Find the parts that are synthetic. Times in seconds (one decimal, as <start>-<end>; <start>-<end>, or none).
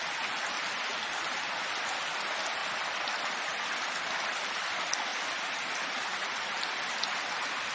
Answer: 2.6-4.5